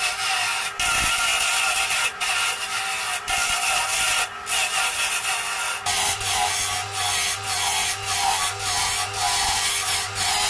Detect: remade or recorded recorded